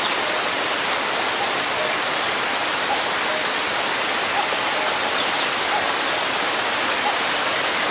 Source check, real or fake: real